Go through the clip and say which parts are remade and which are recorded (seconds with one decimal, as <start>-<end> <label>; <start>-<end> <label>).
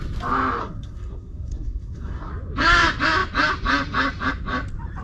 0.0-0.6 recorded; 0.6-2.3 remade; 2.3-5.0 recorded